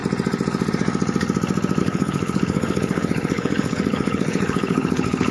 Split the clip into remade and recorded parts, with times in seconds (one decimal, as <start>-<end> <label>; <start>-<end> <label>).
0.0-1.8 recorded; 1.8-5.3 remade